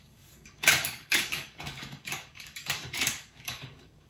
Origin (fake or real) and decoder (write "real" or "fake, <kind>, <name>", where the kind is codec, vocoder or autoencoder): fake, codec, DAC